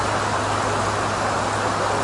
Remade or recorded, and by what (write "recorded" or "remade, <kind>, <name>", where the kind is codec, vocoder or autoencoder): recorded